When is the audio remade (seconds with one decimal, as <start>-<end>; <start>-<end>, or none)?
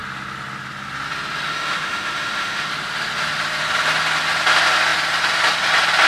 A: 1.5-2.7